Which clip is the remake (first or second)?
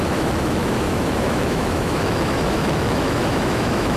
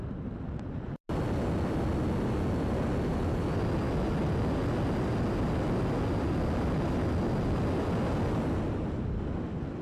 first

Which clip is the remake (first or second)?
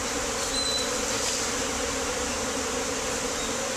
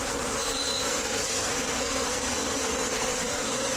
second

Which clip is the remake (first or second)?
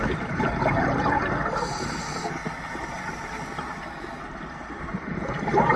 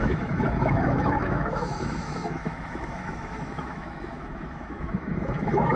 second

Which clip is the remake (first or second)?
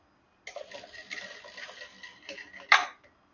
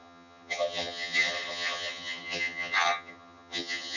second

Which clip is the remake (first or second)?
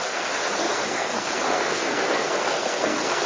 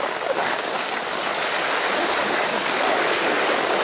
first